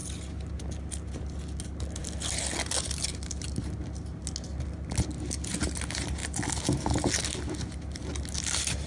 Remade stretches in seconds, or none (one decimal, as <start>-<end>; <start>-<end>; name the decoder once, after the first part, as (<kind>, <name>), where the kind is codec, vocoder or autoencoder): none